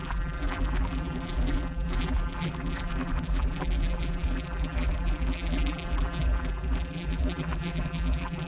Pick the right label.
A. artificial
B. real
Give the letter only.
A